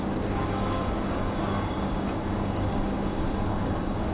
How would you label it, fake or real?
fake